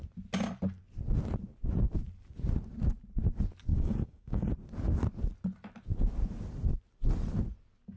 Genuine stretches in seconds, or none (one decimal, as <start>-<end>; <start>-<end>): 0.0-3.7; 4.5-8.0

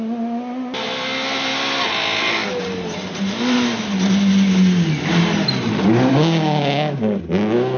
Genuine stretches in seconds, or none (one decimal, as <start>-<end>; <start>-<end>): 0.0-6.1; 7.2-7.8

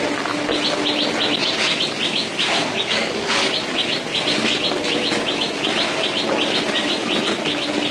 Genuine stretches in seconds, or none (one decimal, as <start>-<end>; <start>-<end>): 0.0-2.6; 3.5-7.9